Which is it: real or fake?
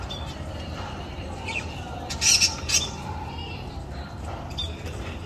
fake